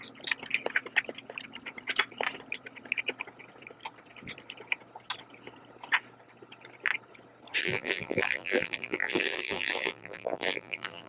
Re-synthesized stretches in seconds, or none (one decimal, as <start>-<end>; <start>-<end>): 7.6-11.1